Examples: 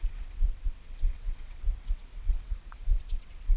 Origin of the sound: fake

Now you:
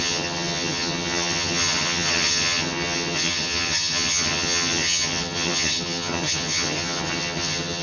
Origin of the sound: fake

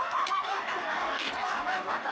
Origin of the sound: fake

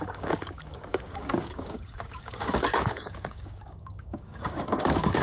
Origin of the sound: fake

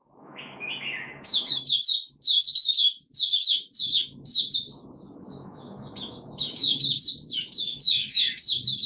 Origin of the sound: fake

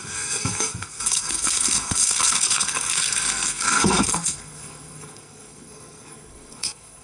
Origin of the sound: fake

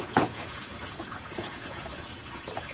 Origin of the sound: fake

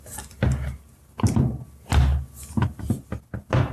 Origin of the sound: real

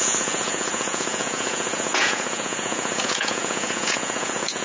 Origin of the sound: fake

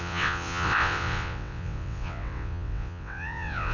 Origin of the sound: fake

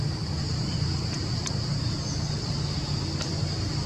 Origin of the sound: real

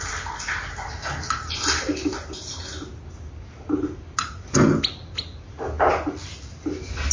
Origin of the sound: real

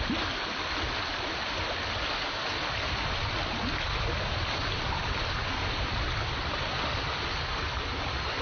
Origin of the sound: real